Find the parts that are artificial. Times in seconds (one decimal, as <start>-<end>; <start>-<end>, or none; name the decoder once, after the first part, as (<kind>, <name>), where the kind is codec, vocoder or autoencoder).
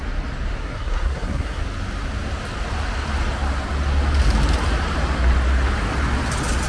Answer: 0.6-1.6 (codec, SNAC)